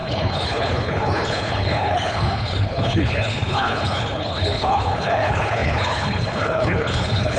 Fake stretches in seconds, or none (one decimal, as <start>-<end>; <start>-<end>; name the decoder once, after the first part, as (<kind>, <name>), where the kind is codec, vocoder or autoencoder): 0.0-7.4 (codec, HILCodec)